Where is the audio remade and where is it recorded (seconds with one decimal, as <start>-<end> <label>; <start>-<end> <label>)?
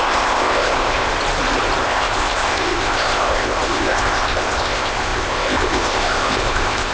0.0-1.1 remade; 1.1-1.8 recorded; 1.8-6.9 remade